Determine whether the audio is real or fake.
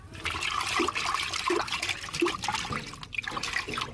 real